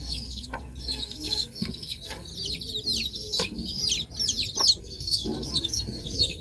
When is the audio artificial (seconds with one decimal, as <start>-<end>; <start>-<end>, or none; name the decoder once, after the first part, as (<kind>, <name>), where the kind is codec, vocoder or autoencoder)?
0.0-2.3 (codec, SNAC); 3.1-3.8; 4.8-6.4